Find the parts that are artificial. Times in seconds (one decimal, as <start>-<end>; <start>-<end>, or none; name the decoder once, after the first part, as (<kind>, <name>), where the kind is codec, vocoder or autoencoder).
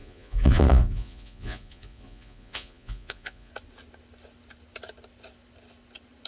0.0-3.5 (vocoder, Vocos)